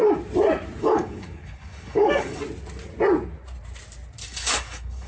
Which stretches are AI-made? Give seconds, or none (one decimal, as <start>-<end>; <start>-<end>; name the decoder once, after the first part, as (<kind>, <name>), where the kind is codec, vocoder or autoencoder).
0.8-2.4 (codec, DAC); 4.3-5.1